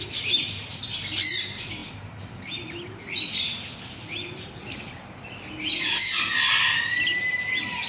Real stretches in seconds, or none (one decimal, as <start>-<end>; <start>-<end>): 0.0-7.9